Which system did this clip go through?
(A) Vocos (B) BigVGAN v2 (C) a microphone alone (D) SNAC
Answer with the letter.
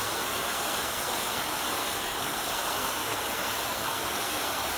D